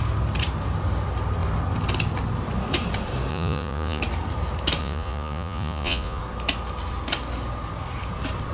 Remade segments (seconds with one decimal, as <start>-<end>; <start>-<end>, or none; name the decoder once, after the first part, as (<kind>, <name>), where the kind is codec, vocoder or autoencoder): 3.3-4.0 (vocoder, Vocos); 4.8-6.2